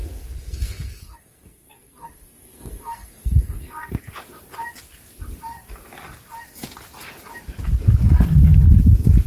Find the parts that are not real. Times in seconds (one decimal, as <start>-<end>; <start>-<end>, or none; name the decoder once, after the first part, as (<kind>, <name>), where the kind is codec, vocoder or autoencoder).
0.0-4.0 (codec, SNAC)

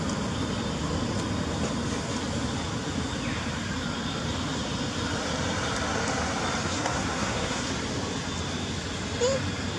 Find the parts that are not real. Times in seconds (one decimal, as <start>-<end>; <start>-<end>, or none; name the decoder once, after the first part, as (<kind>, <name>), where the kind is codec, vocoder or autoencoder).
6.6-7.7 (codec, SNAC)

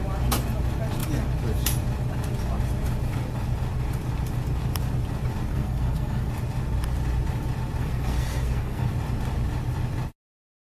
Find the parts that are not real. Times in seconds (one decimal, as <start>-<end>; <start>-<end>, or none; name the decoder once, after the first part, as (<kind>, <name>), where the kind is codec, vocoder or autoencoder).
5.5-6.3 (codec, SNAC); 7.8-8.9

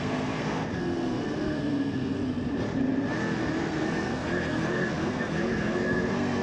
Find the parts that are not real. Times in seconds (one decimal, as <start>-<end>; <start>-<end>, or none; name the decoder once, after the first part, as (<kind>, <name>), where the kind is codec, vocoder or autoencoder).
0.0-2.2 (codec, SNAC); 3.6-6.4

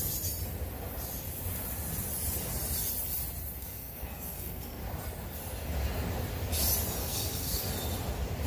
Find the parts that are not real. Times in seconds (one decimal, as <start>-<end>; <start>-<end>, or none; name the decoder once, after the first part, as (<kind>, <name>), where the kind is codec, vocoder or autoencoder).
3.6-4.8 (codec, SNAC); 7.0-7.7

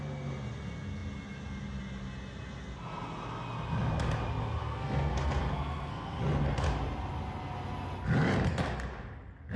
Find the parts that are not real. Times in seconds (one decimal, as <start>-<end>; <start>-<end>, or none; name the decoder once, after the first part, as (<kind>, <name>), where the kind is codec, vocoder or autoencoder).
4.6-6.2 (codec, SNAC)

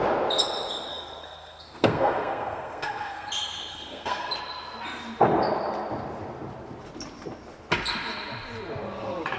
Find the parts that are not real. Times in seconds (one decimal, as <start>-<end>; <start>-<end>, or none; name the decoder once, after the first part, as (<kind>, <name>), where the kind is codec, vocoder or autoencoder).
0.9-3.3 (codec, SNAC); 3.7-4.3

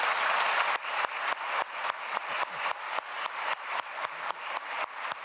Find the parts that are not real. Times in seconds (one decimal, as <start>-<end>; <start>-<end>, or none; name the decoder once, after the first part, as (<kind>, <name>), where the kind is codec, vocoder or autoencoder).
none